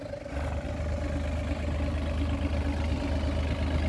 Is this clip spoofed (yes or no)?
no